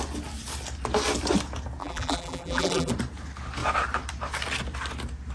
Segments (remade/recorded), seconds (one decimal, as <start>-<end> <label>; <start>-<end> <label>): 0.0-1.8 recorded; 1.8-2.9 remade; 2.9-5.3 recorded